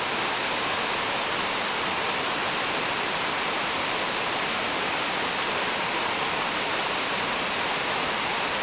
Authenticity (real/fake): real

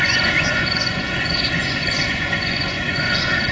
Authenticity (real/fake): fake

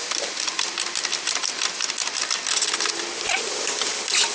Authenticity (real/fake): real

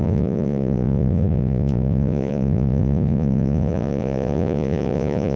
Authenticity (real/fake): fake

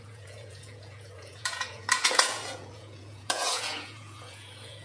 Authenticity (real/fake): fake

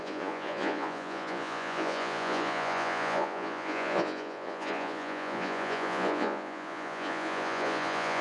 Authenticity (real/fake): fake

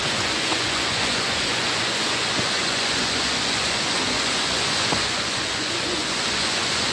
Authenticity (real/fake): fake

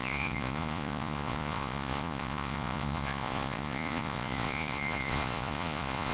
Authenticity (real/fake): fake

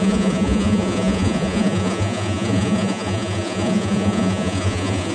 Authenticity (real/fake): fake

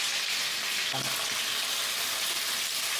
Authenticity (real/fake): real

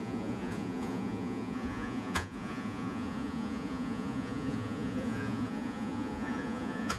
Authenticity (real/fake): fake